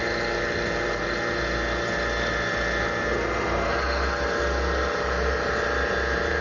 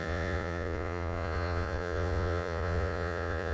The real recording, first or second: first